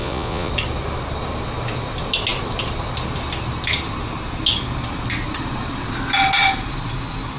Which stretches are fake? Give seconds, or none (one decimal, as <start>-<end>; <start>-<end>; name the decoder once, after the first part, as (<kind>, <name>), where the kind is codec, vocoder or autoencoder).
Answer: 0.0-0.5 (vocoder, Vocos)